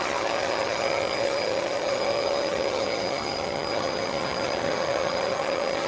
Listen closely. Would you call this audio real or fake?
fake